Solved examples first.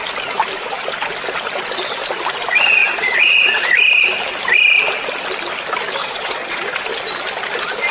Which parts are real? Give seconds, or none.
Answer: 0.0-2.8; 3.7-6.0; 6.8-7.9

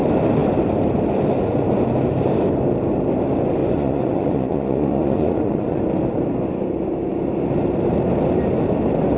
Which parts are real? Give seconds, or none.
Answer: 0.0-3.6; 5.8-9.2

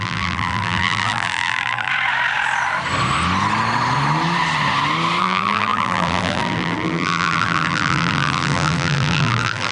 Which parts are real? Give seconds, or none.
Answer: 1.9-5.2

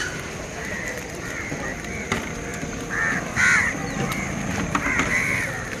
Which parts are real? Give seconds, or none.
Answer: 0.0-0.5; 3.8-4.7

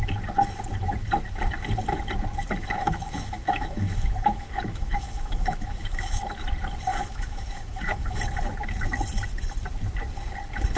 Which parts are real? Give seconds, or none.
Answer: 0.0-2.8; 6.2-6.9; 8.2-10.8